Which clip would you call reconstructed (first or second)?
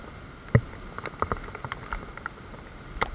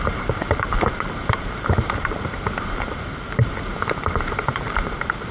second